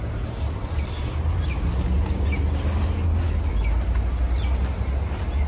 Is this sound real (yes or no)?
yes